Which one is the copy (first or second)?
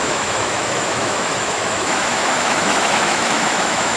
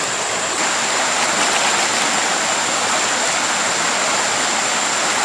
first